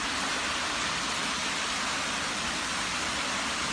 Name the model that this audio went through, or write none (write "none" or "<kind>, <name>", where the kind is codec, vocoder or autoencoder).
vocoder, BigVGAN v2